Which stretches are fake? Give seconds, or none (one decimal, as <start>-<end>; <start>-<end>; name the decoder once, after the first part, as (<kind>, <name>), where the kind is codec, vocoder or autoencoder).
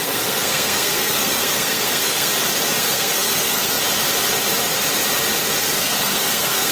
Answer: 0.0-2.3 (codec, SNAC); 2.8-3.8; 5.6-6.7